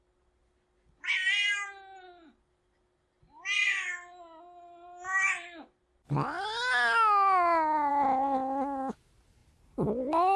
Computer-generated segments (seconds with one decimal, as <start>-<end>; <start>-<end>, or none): none